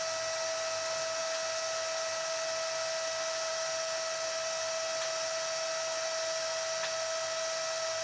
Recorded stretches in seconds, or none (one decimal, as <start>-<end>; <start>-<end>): 0.0-8.0